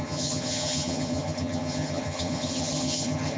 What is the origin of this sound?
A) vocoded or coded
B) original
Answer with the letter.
A